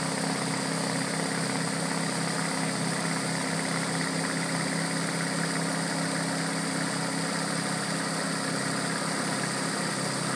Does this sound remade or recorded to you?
recorded